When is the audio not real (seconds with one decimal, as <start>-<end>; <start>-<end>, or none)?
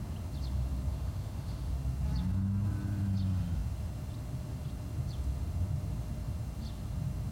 0.9-1.7